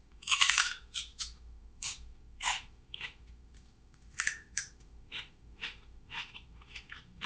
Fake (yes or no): yes